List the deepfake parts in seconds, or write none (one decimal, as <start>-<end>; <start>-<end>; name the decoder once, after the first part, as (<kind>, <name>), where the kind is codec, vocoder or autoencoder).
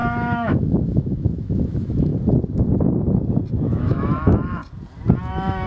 0.0-2.1 (autoencoder, DAC-VAE); 3.5-4.6; 5.3-5.7